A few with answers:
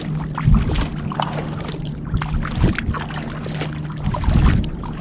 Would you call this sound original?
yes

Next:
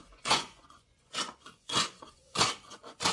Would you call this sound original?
no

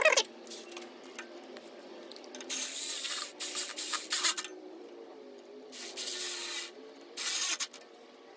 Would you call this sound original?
yes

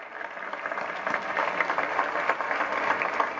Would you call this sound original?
yes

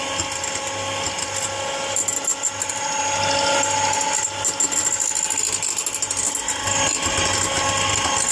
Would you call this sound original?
yes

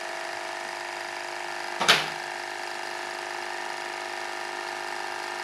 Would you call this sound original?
yes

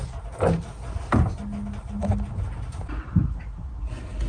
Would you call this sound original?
yes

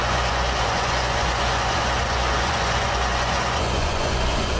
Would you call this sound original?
no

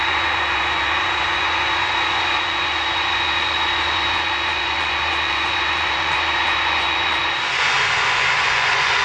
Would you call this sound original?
no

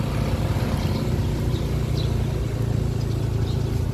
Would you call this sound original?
yes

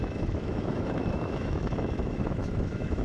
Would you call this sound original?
no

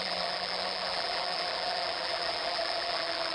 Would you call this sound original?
no